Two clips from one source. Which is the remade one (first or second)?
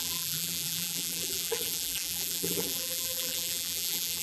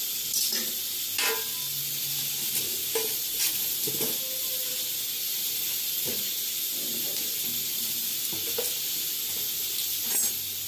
first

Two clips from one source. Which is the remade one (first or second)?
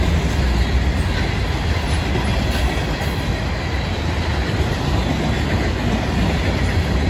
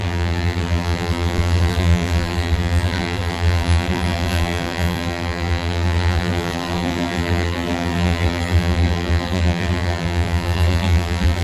second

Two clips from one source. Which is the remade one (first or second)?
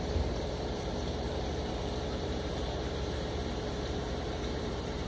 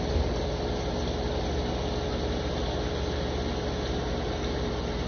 first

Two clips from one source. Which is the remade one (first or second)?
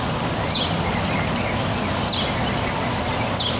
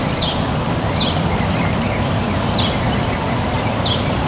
second